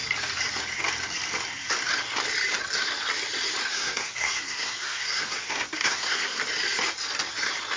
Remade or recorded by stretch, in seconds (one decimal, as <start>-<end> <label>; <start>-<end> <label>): 0.0-3.7 recorded; 3.7-6.4 remade; 6.4-7.8 recorded